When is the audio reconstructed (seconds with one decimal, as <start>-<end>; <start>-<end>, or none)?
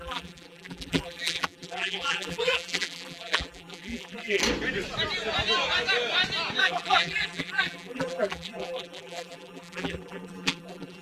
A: 0.0-4.4; 6.6-11.0